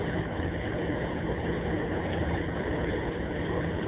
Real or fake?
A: fake